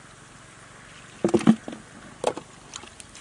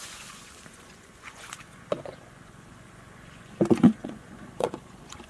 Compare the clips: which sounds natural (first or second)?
first